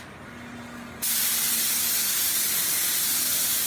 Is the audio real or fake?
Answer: real